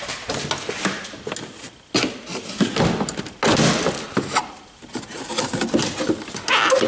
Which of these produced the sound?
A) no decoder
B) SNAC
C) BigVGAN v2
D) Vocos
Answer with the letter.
A